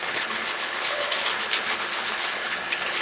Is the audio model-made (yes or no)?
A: yes